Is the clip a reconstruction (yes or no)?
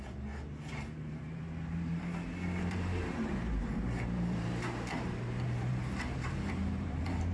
yes